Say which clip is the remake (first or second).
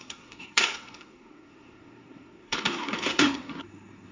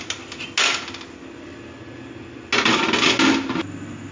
first